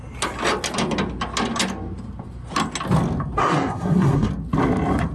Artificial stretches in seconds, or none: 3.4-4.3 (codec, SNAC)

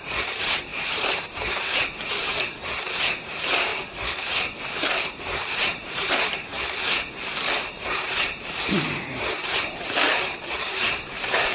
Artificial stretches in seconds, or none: 0.0-3.7 (vocoder, BigVGAN v2); 5.1-6.5; 7.7-11.5